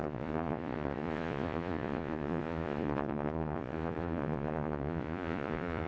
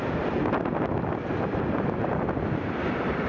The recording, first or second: second